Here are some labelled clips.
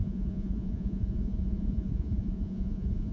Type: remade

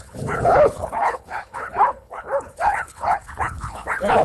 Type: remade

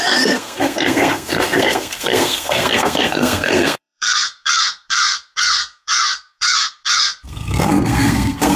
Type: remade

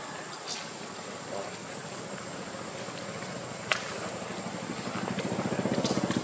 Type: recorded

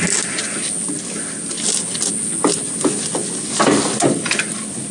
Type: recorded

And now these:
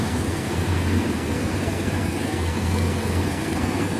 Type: remade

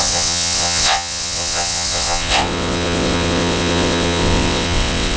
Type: remade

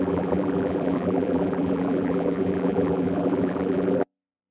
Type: remade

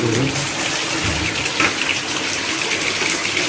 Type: recorded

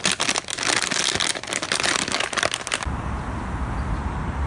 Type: recorded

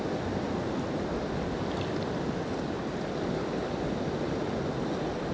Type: recorded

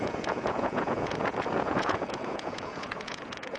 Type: remade